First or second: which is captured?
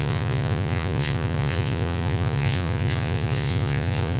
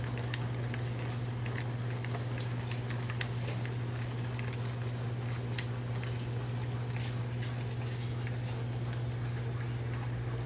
second